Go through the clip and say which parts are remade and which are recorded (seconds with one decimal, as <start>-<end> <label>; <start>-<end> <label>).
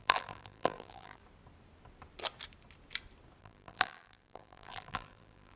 0.0-1.2 remade; 1.2-3.4 recorded; 3.4-5.6 remade